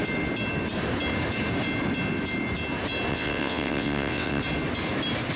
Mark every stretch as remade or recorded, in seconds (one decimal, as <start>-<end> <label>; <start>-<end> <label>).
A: 0.0-3.1 recorded; 3.1-4.4 remade; 4.4-5.4 recorded